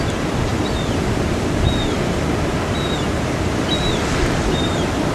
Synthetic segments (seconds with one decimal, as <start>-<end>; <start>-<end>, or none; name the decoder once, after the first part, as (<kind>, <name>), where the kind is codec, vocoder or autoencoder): none